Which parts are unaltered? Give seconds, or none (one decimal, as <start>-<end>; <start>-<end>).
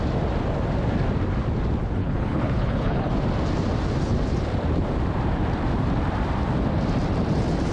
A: 0.0-2.0; 3.1-7.7